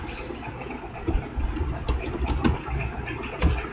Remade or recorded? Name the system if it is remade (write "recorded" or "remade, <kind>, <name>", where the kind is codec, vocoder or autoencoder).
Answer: recorded